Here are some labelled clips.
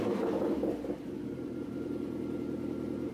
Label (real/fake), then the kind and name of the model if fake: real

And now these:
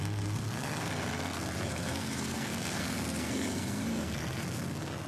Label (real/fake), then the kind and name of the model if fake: fake, codec, SNAC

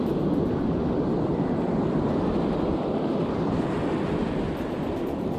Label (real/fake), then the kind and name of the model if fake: real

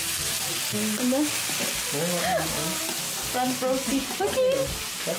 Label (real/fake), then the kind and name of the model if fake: real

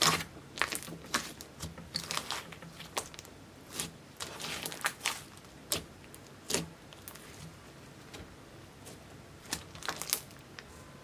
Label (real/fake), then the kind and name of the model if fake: real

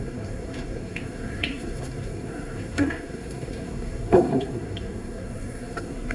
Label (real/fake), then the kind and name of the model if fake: fake, codec, SNAC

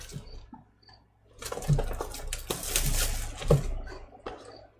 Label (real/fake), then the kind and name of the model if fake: real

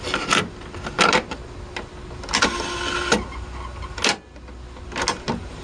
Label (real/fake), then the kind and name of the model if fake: real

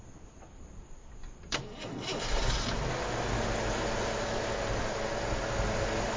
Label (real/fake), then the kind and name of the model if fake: real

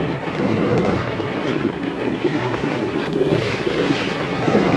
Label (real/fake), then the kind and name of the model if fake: fake, codec, SNAC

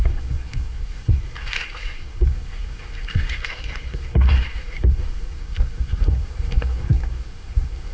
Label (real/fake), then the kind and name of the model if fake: fake, codec, SNAC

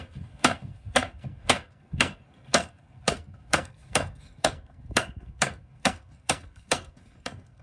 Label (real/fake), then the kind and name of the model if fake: fake, codec, SNAC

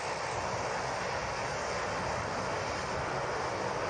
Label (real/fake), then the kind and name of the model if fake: real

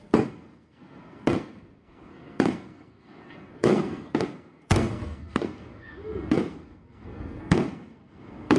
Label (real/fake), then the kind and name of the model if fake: fake, codec, SNAC